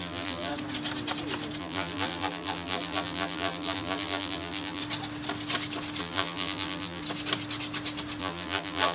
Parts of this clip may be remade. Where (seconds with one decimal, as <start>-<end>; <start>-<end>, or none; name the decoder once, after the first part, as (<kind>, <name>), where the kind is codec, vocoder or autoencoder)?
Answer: 0.0-0.5 (vocoder, BigVGAN v2); 1.6-4.8; 6.0-7.0; 8.2-8.9